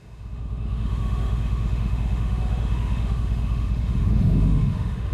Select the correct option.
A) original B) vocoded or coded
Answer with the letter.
B